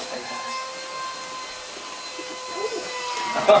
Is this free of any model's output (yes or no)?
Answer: yes